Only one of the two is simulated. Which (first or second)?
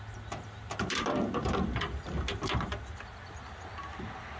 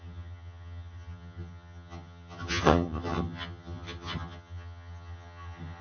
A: second